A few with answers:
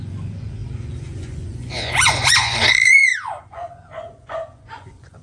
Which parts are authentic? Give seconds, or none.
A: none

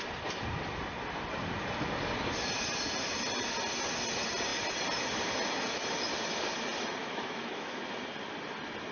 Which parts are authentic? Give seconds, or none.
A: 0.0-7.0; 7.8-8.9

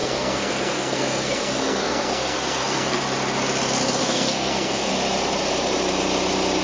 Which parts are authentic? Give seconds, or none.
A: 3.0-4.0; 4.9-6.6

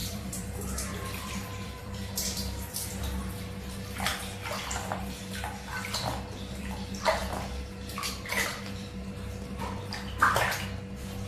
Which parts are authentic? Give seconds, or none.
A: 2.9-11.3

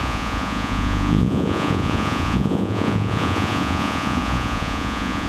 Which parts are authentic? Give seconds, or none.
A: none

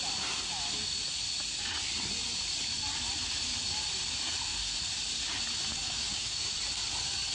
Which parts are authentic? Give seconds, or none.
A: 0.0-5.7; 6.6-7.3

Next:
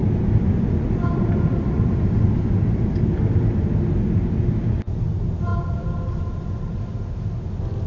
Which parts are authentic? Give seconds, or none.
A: 4.6-5.5; 6.8-7.9

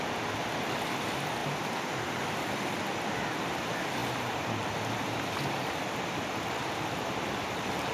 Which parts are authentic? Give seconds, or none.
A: 0.0-1.4; 2.0-7.9